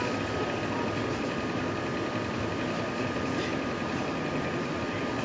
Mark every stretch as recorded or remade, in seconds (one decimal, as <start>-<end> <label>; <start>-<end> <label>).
0.0-5.2 recorded